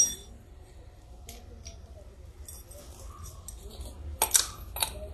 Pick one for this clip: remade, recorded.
recorded